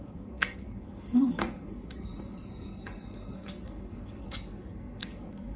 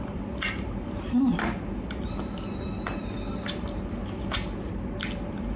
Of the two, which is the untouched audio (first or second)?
second